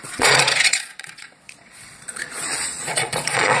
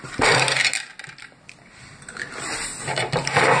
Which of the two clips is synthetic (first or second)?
first